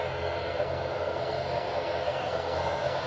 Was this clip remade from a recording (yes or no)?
yes